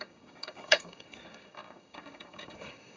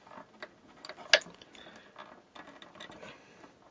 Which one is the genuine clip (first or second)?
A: second